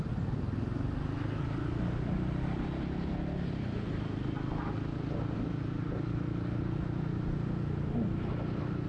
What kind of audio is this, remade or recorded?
recorded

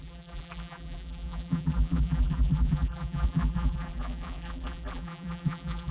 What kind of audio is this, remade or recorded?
remade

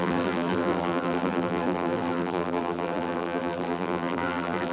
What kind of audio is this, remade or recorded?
remade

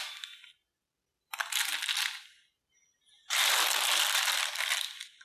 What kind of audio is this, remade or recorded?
recorded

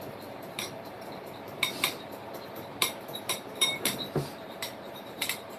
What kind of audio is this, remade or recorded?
remade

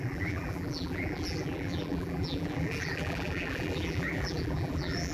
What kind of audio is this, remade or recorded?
remade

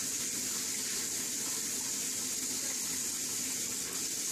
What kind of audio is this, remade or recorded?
recorded